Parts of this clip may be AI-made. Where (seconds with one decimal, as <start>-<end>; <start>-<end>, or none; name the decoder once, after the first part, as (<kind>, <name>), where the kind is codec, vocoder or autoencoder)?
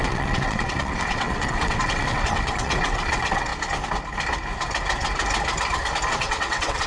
0.0-3.5 (vocoder, WaveNeXt); 6.1-6.9